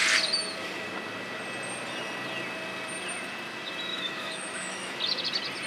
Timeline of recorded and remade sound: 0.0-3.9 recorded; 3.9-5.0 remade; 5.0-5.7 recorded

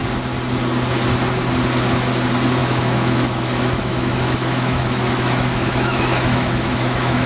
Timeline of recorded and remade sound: 0.0-2.6 recorded; 2.6-7.3 remade

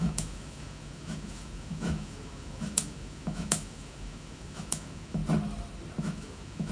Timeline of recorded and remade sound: 0.0-5.2 remade; 5.2-6.0 recorded; 6.0-6.7 remade